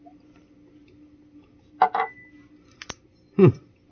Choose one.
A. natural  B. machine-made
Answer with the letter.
A